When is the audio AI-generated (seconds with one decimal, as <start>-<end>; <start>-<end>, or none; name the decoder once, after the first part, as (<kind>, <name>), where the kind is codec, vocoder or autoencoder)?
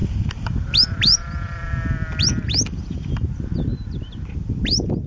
0.0-3.1 (vocoder, BigVGAN v2); 3.7-5.1